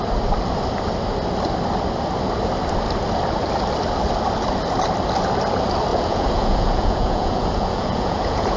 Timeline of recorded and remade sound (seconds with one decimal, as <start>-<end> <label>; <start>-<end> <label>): 0.0-5.9 recorded; 5.9-8.6 remade